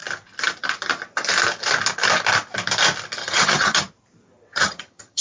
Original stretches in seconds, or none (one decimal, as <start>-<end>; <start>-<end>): 0.0-3.2; 3.9-4.5